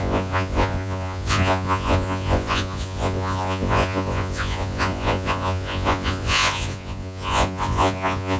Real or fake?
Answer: fake